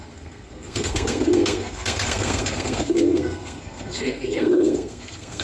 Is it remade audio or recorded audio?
remade